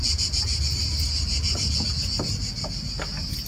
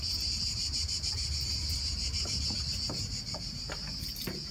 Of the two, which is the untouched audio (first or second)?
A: first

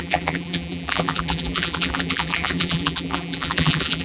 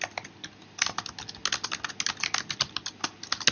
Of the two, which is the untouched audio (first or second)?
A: second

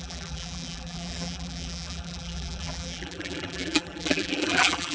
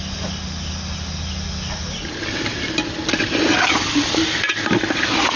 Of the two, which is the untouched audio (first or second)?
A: second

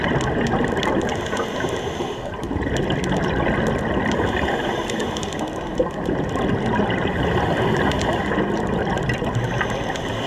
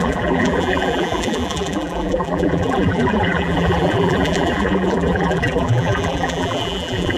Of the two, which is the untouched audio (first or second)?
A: first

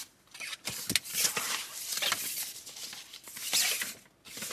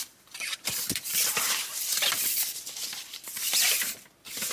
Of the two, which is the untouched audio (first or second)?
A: first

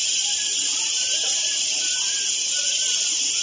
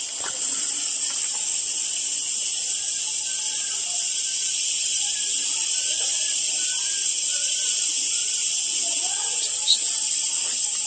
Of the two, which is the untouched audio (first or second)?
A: second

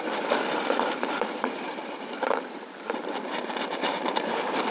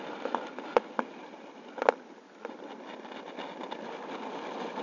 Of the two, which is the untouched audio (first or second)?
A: second